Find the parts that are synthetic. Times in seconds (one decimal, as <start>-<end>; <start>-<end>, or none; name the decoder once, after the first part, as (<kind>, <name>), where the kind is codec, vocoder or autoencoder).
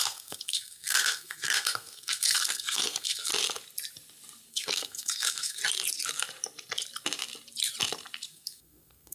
0.0-3.3 (codec, SNAC); 4.5-5.6; 8.3-9.1